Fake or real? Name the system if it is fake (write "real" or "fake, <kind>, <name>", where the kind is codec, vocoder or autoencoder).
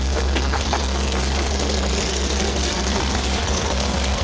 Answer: fake, codec, SNAC